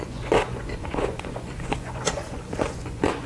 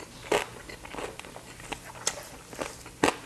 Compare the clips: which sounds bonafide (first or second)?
second